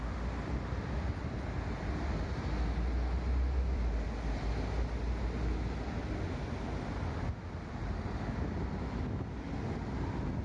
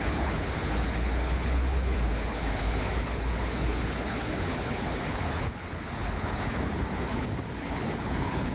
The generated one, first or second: second